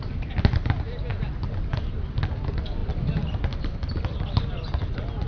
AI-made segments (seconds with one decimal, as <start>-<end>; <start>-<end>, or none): none